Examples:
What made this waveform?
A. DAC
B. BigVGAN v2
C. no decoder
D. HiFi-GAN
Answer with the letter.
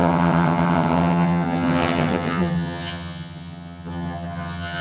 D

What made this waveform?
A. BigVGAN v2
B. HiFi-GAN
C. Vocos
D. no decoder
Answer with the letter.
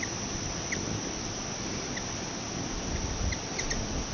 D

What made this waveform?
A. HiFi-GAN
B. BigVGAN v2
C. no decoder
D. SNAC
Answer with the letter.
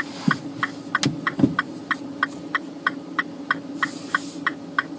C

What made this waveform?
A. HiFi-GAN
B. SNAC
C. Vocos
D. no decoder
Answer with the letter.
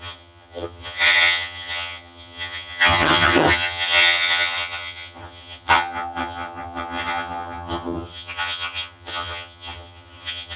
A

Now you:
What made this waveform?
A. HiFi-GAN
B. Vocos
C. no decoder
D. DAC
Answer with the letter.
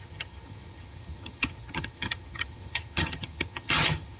A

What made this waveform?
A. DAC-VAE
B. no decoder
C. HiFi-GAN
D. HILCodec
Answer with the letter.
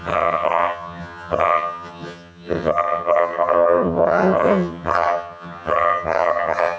C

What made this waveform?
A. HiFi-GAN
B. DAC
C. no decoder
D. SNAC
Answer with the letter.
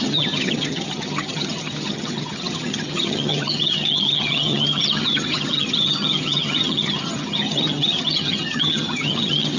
A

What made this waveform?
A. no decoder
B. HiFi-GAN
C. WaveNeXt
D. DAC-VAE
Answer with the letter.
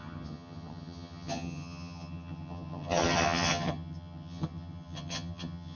B